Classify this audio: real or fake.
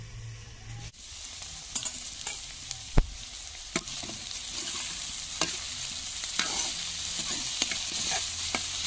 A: real